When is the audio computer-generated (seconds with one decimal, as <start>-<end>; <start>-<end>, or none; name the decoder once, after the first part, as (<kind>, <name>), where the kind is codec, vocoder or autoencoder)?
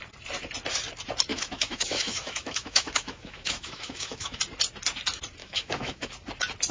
1.3-4.4 (autoencoder, DAC-VAE); 5.4-6.1